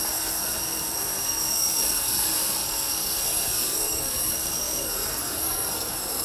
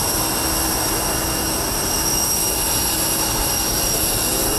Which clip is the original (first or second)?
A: second